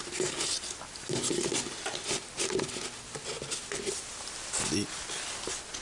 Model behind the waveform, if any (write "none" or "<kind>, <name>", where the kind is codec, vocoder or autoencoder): none